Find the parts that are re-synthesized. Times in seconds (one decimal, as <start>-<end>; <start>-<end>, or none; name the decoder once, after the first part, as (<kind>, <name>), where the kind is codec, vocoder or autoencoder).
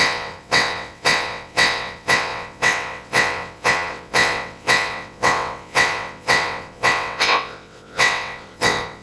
0.0-9.0 (vocoder, WaveNeXt)